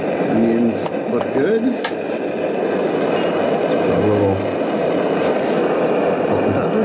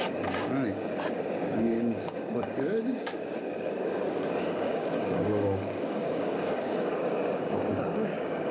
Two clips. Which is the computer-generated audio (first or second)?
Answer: second